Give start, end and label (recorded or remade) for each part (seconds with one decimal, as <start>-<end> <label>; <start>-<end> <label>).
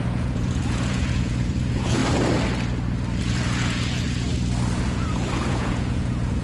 0.0-2.0 remade; 2.0-3.2 recorded; 3.2-4.3 remade; 4.3-4.8 recorded; 4.8-6.4 remade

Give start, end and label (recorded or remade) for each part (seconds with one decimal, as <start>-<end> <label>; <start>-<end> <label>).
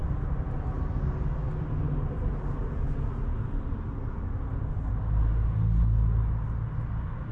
0.0-7.3 recorded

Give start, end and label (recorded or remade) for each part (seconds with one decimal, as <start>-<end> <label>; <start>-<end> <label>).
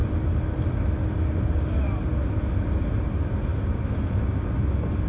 0.0-5.1 recorded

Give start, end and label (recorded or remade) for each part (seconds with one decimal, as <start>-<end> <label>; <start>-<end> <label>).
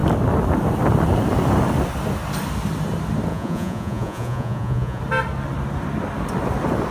0.0-3.3 recorded; 3.3-5.0 remade; 5.0-6.9 recorded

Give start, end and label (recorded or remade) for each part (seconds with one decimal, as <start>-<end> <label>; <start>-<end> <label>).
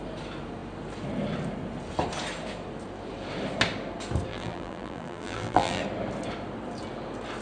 0.0-4.3 recorded; 4.3-5.8 remade; 5.8-7.4 recorded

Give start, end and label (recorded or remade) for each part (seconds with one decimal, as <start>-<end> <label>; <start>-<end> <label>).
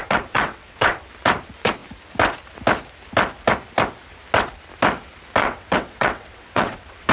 0.0-0.9 remade; 0.9-5.4 recorded; 5.4-7.1 remade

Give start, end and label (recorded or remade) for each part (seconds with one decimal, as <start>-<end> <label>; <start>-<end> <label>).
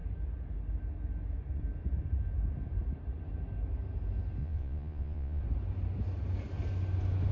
0.0-4.4 recorded; 4.4-5.4 remade; 5.4-7.3 recorded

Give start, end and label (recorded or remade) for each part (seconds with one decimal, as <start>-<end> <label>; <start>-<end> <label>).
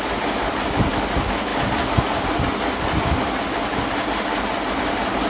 0.0-5.3 recorded